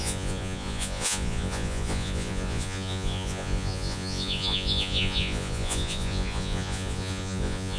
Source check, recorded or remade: remade